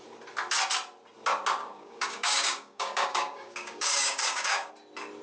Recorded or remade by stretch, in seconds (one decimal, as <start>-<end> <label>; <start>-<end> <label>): 0.0-1.6 recorded; 1.6-4.7 remade; 4.7-5.2 recorded